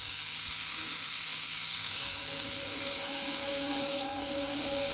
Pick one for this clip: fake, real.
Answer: fake